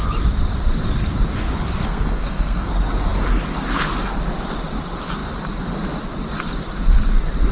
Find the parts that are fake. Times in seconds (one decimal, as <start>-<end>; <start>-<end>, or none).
1.8-2.7